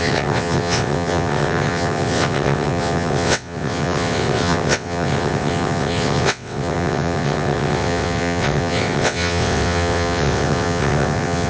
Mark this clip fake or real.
fake